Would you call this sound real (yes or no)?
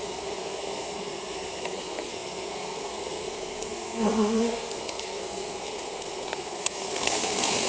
no